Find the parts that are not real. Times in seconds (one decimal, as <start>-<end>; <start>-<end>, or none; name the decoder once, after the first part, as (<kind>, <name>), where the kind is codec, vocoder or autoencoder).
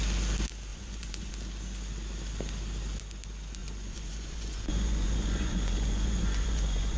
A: 0.7-1.3 (vocoder, Vocos); 3.6-7.0